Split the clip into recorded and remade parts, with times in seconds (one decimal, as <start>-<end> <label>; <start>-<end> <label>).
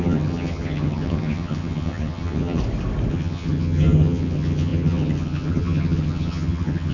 0.0-2.6 remade; 2.6-3.1 recorded; 3.1-6.9 remade